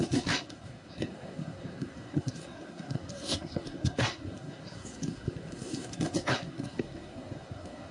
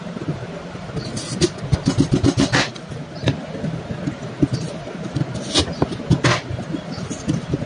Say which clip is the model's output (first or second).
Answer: first